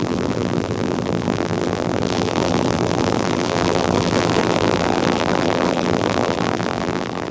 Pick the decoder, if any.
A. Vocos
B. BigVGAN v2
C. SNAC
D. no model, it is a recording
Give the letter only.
B